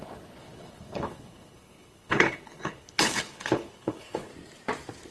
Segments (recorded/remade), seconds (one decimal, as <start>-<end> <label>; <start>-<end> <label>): 0.0-4.3 remade; 4.3-5.1 recorded